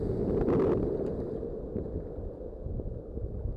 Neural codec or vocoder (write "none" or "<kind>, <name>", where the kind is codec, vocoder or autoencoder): none